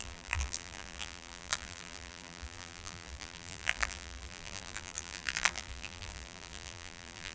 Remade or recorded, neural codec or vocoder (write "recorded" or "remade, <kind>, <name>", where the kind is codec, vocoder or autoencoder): remade, vocoder, BigVGAN v2